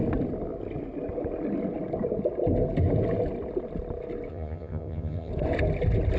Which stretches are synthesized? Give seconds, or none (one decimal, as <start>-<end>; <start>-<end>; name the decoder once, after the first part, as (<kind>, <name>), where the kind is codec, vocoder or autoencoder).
4.3-5.3 (vocoder, HiFi-GAN)